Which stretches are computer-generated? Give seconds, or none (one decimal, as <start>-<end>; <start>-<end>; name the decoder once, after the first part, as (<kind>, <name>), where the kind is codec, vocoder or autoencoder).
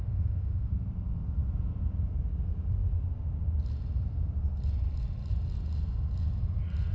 0.0-0.7 (autoencoder, DAC-VAE)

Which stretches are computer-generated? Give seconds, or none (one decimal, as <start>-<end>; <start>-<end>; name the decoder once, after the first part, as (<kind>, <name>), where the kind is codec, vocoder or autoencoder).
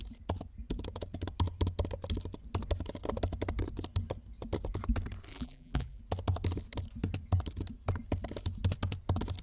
5.3-6.0 (vocoder, BigVGAN v2)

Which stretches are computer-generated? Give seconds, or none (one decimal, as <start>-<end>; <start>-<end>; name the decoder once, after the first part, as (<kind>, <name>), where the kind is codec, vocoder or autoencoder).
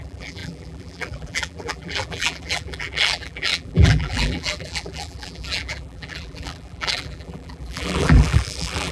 0.0-8.9 (vocoder, BigVGAN v2)